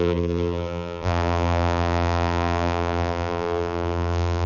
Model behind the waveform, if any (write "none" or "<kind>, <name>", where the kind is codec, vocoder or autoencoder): vocoder, BigVGAN v2